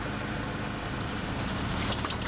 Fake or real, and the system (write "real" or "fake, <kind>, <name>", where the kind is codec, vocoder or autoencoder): real